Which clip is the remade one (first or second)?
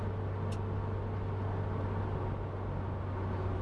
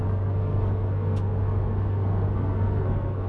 second